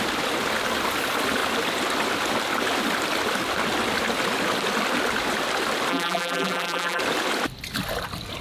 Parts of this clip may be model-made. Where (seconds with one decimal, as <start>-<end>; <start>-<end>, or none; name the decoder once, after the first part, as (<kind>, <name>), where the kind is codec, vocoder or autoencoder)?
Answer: 5.9-7.0 (vocoder, BigVGAN v2)